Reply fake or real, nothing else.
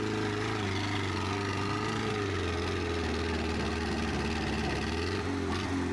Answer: real